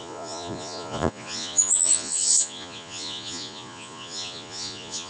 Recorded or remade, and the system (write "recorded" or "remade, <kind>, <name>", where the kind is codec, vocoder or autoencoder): remade, vocoder, Vocos